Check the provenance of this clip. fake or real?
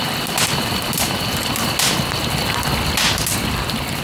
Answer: real